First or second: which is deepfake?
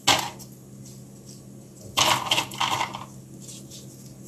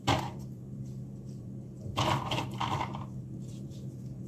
second